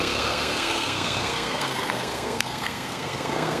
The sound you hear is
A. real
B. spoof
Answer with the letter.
B